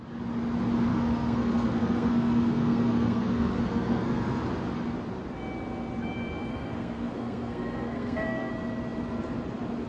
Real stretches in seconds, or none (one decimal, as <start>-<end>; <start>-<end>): 0.0-0.9; 4.4-6.5; 8.5-9.9